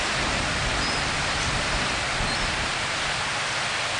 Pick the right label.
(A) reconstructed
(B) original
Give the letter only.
B